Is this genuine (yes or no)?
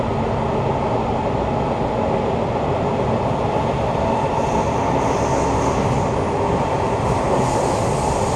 yes